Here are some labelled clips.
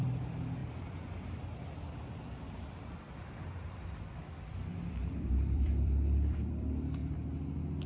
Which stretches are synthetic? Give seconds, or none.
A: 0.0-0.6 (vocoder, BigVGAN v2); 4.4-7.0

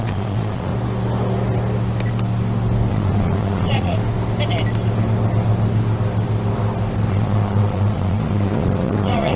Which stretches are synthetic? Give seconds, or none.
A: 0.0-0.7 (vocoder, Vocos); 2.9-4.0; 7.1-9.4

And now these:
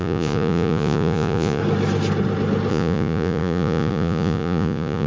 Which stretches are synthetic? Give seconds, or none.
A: 0.0-1.6 (vocoder, Vocos); 2.7-5.1

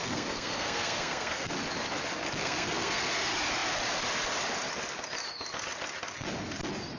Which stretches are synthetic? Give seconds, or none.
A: 0.0-1.5 (codec, SNAC); 2.4-3.0

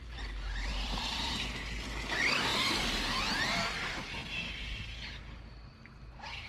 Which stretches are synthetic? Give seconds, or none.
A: 0.7-1.3 (vocoder, BigVGAN v2)

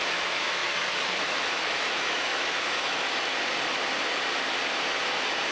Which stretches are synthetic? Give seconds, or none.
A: 0.0-3.3 (autoencoder, DAC-VAE)

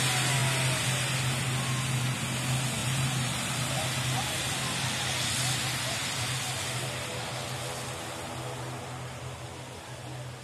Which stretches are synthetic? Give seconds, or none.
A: 2.8-3.5 (vocoder, BigVGAN v2)

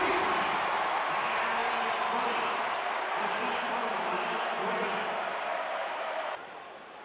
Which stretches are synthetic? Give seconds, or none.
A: 1.6-4.6 (vocoder, BigVGAN v2); 5.8-6.6